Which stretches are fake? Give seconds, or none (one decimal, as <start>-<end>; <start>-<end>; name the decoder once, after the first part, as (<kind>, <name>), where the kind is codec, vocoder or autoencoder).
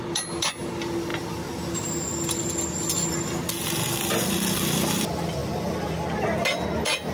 none